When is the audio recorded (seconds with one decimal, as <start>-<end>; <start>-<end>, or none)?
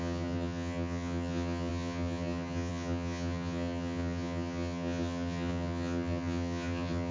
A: none